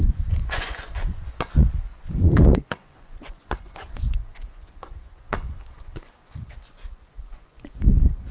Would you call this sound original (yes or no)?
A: no